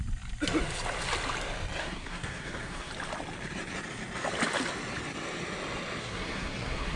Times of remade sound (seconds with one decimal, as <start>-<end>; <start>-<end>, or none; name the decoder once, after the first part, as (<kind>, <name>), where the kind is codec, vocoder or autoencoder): 1.8-2.9 (codec, SNAC); 6.0-7.0